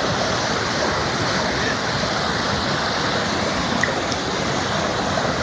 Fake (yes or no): no